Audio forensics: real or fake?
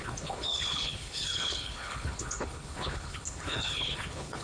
fake